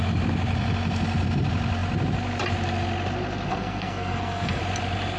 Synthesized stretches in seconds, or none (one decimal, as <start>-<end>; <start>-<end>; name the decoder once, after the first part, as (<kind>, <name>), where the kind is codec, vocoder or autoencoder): 3.5-4.6 (codec, SNAC)

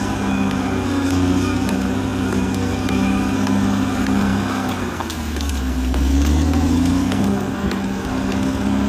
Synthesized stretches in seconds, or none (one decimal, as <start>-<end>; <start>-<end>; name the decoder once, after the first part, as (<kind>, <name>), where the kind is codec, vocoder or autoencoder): 0.0-8.9 (codec, SNAC)

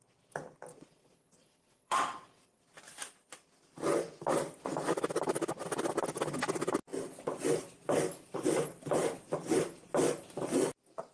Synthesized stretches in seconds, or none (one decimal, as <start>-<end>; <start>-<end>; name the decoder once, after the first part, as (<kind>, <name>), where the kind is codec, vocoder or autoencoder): 0.7-2.6 (vocoder, WaveNeXt)

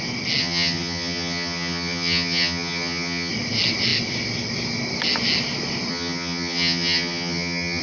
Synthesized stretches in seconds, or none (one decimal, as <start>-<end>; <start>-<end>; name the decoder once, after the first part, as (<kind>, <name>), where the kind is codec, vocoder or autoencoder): 0.4-3.3 (vocoder, HiFi-GAN); 5.9-7.8

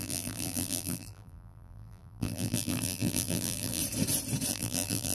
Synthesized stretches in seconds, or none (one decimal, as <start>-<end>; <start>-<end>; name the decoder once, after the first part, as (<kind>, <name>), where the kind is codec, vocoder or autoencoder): 0.0-3.8 (vocoder, BigVGAN v2); 4.5-5.1

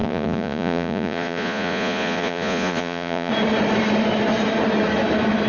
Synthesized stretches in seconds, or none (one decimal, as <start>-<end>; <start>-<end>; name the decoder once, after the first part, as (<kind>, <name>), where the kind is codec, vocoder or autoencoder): 0.0-3.3 (vocoder, Vocos)